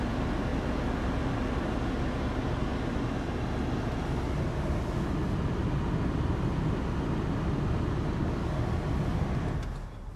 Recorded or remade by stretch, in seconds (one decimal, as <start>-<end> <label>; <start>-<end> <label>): 0.0-8.2 recorded; 8.2-8.7 remade; 8.7-10.2 recorded